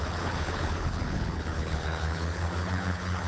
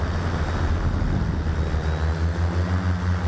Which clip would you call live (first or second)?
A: second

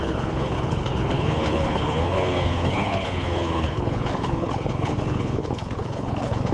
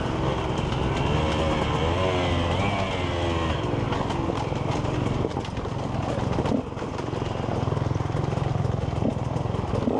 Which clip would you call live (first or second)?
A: second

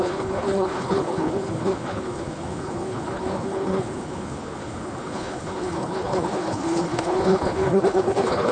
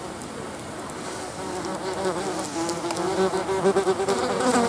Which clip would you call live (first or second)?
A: second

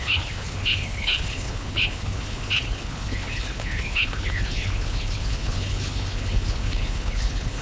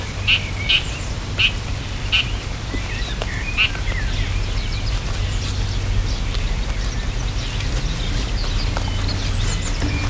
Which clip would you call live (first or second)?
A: second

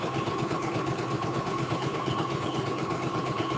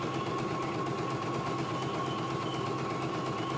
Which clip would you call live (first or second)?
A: second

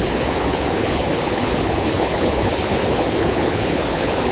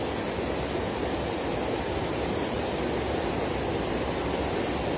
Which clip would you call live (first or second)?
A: second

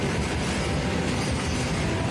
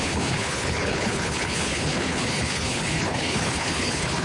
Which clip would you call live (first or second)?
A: first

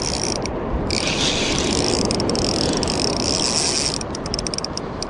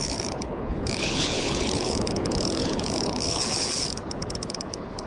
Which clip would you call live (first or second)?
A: first